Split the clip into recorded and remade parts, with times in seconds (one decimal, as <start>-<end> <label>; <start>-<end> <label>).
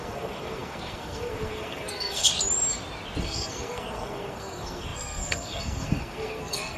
0.0-2.3 remade; 2.3-3.2 recorded; 3.2-6.8 remade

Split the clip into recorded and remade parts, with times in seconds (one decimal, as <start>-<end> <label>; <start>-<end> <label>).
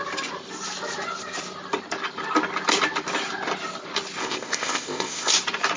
0.0-4.2 recorded; 4.2-5.3 remade; 5.3-5.8 recorded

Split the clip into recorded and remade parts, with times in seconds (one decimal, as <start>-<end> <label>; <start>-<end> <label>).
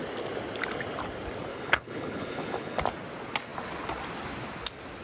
0.0-1.5 recorded; 1.5-2.8 remade; 2.8-5.0 recorded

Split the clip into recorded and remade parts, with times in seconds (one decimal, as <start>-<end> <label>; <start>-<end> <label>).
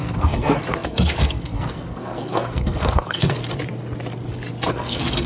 0.0-3.4 remade; 3.4-4.7 recorded; 4.7-5.3 remade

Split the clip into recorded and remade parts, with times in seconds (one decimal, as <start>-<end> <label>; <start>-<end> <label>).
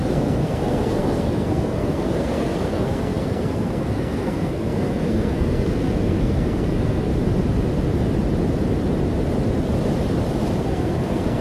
0.0-7.1 remade; 7.1-10.6 recorded; 10.6-11.4 remade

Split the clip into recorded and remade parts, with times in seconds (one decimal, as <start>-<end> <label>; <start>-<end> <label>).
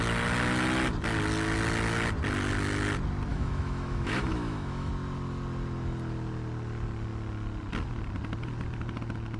0.0-3.3 recorded; 3.3-4.9 remade; 4.9-9.4 recorded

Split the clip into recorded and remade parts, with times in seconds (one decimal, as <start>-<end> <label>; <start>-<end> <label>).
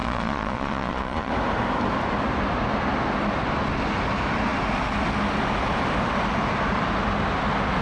0.0-1.3 remade; 1.3-7.8 recorded